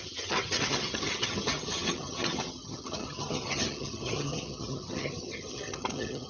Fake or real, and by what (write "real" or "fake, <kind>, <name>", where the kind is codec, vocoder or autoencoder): fake, vocoder, HiFi-GAN